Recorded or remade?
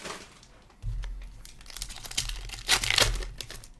recorded